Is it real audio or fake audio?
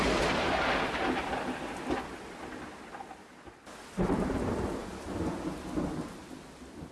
real